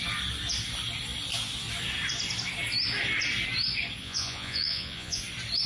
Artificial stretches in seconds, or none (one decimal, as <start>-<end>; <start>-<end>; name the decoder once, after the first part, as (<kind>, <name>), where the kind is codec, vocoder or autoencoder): 4.0-5.2 (vocoder, Vocos)